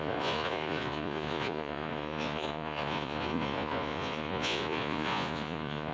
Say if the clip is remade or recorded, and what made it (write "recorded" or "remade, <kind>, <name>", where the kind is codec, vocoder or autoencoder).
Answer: remade, vocoder, Vocos